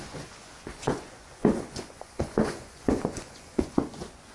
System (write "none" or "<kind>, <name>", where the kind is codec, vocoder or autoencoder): vocoder, Vocos